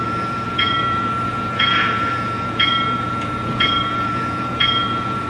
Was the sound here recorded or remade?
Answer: remade